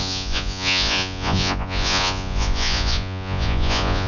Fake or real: fake